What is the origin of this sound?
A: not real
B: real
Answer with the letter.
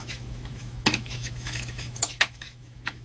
A